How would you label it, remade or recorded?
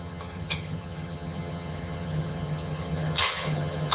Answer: remade